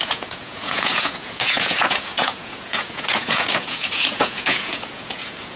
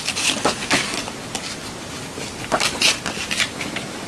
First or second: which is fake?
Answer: first